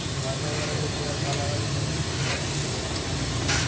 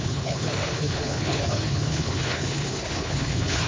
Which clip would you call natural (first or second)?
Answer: first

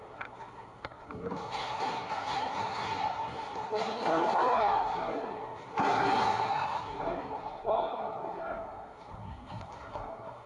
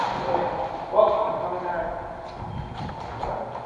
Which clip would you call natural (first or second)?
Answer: second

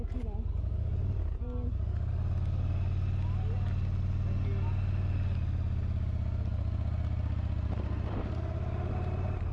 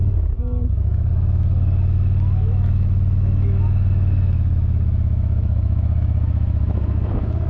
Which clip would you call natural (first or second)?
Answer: first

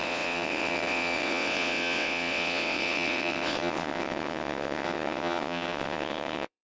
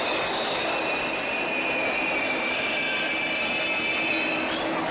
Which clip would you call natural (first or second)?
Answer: second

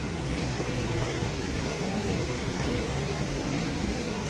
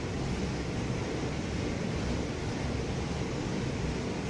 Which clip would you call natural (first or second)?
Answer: second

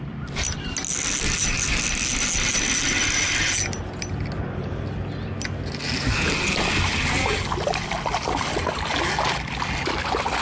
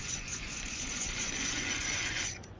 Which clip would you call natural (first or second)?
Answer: first